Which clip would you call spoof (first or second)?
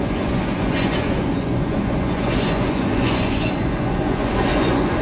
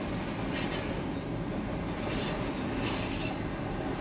first